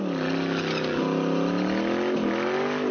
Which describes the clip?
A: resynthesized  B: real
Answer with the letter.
B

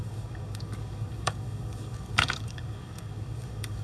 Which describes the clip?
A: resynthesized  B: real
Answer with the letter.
A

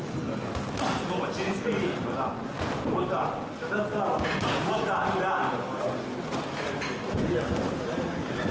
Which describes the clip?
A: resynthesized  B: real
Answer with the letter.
B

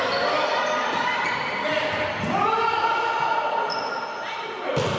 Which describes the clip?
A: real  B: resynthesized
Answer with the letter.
A